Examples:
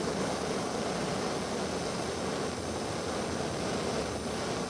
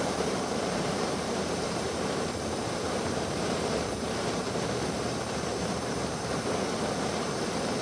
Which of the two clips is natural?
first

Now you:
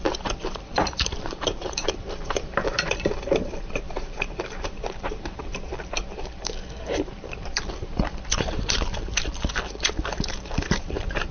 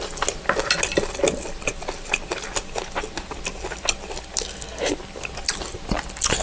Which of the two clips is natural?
second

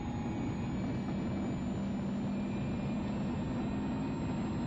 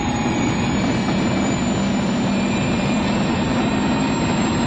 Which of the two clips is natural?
first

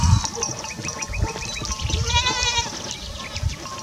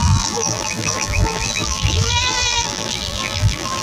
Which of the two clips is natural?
first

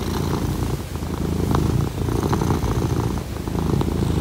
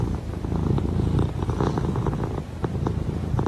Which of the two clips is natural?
first